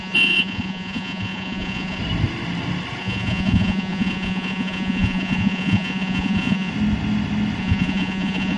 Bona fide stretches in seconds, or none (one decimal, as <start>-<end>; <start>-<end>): 2.0-3.0; 6.7-7.6